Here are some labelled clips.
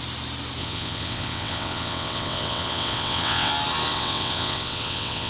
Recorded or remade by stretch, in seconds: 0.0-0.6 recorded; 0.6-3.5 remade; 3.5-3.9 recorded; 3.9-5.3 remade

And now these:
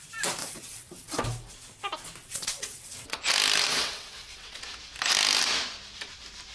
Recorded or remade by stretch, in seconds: 0.0-0.4 recorded; 0.4-1.2 remade; 1.2-2.2 recorded; 2.2-3.2 remade; 3.2-3.7 recorded; 3.7-4.6 remade; 4.6-6.5 recorded